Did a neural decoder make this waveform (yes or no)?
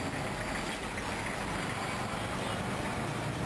no